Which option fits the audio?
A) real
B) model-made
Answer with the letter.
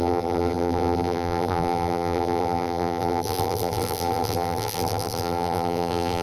B